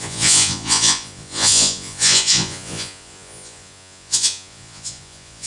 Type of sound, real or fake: fake